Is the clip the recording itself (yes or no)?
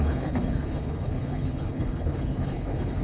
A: no